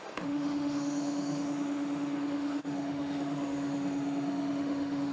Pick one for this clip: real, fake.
fake